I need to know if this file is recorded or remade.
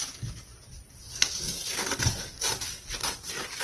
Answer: recorded